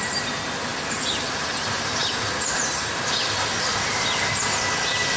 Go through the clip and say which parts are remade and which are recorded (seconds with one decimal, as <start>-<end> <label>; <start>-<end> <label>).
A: 0.0-5.2 recorded